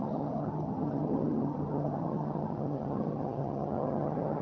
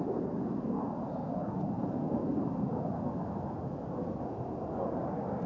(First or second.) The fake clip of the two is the first